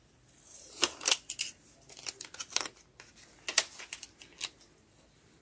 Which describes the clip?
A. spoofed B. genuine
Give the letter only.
B